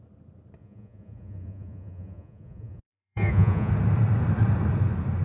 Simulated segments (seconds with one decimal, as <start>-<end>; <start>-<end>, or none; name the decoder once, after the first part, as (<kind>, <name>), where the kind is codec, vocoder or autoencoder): 0.6-3.7 (vocoder, Vocos)